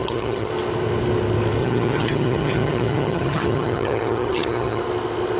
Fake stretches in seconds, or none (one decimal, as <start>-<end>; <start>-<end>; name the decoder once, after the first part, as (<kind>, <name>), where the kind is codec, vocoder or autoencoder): 0.0-0.5 (vocoder, HiFi-GAN); 1.6-4.8